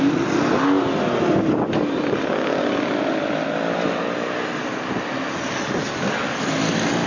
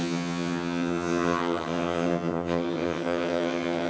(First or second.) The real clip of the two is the first